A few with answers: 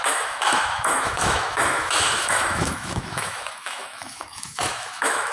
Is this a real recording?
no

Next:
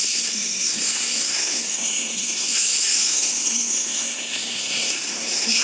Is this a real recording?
no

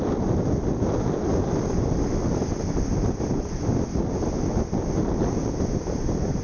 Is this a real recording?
yes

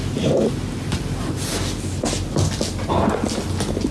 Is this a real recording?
yes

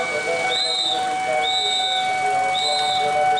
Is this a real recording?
yes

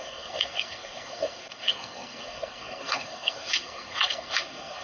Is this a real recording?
no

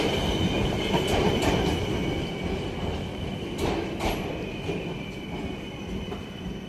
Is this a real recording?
yes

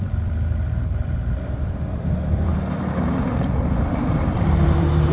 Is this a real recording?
no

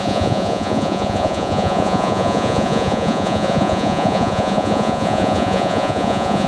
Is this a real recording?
no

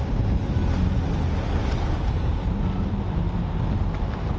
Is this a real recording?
yes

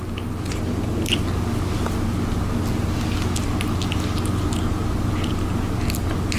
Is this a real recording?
yes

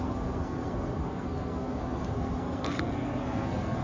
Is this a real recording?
no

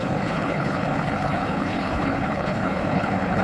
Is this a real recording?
no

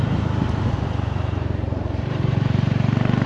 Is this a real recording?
no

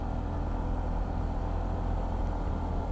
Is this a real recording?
yes